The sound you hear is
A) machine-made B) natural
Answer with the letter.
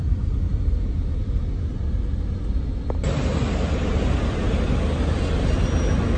B